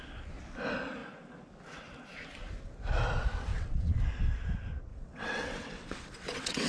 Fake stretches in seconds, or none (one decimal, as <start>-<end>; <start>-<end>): 3.5-4.0; 4.9-6.7